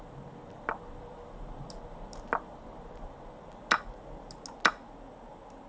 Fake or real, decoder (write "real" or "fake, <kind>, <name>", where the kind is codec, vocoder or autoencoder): real